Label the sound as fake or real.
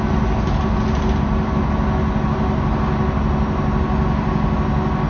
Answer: real